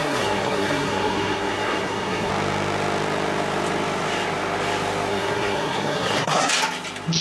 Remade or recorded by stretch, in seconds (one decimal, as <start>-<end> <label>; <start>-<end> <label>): 0.0-2.3 remade; 2.3-5.1 recorded; 5.1-6.5 remade; 6.5-7.2 recorded